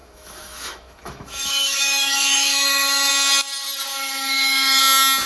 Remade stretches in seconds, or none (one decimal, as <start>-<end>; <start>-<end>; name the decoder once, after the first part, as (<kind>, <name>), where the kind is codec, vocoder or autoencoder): 0.0-3.1 (autoencoder, DAC-VAE); 3.9-4.8